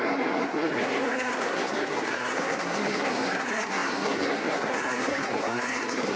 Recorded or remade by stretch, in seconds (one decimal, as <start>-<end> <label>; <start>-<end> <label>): 0.0-6.2 remade